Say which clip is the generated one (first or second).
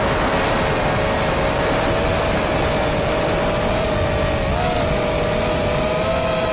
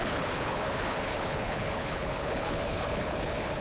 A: second